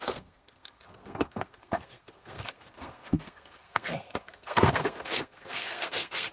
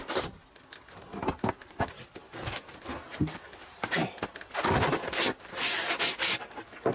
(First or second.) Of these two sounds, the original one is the second